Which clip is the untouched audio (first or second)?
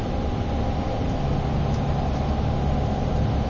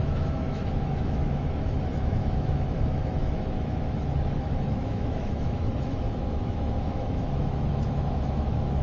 first